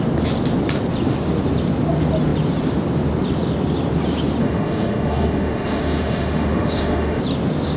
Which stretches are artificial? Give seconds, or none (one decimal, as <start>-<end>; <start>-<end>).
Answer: 4.4-7.2